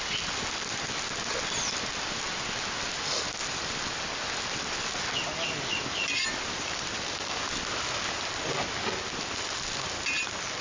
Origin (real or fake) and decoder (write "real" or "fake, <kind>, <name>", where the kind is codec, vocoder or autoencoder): real